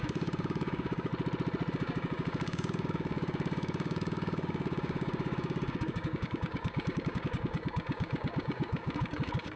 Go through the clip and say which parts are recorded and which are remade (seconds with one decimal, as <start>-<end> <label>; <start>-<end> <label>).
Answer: 0.0-1.1 remade; 1.1-1.7 recorded; 1.7-9.6 remade